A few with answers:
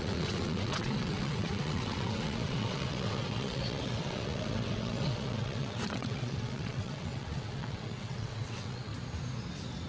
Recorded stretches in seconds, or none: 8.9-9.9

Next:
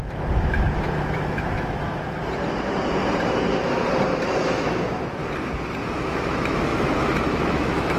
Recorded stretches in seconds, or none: 2.2-4.2; 5.2-5.9

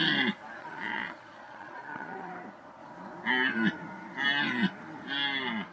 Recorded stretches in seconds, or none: 0.0-0.6; 2.3-5.7